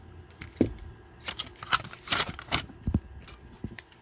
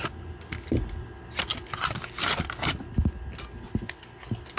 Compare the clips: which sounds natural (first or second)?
second